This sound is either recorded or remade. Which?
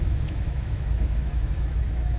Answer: remade